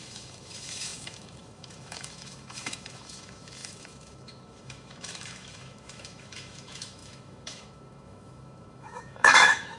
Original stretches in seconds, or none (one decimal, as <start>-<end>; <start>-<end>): none